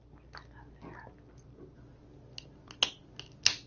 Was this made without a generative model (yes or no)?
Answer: yes